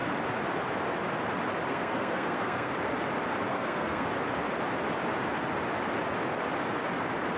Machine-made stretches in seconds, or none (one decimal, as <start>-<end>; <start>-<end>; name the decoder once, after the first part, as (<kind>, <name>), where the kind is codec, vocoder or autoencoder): 1.7-2.7 (codec, SNAC); 3.5-4.1